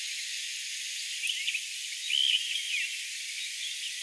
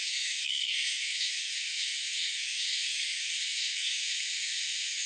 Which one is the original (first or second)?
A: first